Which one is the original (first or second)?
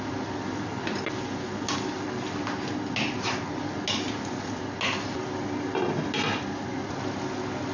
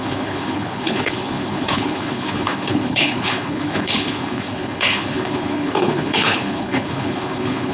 first